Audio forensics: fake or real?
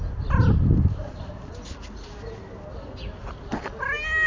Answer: real